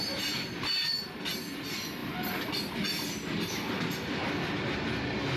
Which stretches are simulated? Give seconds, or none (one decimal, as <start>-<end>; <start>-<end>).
none